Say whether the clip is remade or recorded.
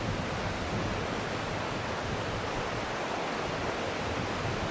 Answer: recorded